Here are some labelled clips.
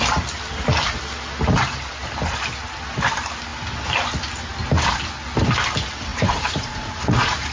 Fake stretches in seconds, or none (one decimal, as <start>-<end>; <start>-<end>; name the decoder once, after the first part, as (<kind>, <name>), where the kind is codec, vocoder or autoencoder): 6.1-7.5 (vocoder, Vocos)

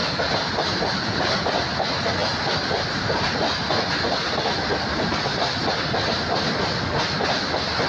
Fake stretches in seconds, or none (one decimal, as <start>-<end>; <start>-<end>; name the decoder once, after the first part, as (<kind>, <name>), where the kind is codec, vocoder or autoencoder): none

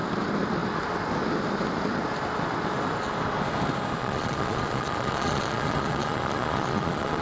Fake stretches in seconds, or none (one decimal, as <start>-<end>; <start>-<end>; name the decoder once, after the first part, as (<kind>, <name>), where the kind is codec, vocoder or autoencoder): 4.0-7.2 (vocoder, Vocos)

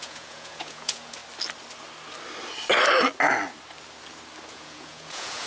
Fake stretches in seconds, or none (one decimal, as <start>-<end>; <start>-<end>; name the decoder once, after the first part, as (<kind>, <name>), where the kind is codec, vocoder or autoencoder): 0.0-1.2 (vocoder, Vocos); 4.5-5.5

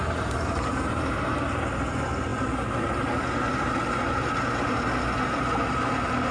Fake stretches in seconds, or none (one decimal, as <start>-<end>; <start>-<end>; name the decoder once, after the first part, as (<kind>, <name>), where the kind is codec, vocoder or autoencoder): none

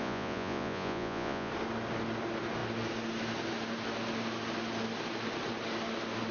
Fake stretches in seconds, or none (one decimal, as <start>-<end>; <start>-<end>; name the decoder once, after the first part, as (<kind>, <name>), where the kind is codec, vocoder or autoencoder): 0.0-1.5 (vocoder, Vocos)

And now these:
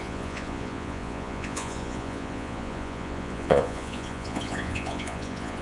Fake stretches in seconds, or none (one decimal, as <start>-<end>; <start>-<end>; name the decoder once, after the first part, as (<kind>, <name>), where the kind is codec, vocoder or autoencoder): 0.0-5.6 (vocoder, Vocos)

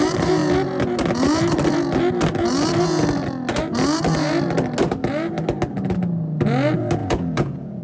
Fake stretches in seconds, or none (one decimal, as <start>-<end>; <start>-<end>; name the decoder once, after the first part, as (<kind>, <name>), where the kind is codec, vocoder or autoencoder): 7.0-7.8 (vocoder, Vocos)